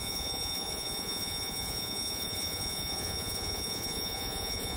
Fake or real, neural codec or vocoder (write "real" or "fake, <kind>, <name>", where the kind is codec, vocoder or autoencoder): fake, vocoder, Vocos